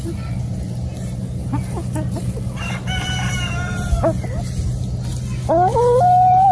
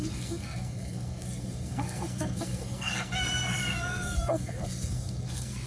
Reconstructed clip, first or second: second